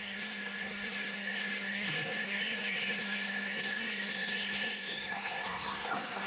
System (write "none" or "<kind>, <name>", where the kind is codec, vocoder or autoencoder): codec, SNAC